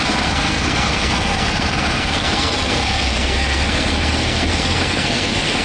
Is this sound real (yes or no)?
no